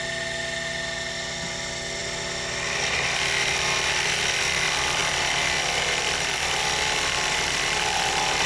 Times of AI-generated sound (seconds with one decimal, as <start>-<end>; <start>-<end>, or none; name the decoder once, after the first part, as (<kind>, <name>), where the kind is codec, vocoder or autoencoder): none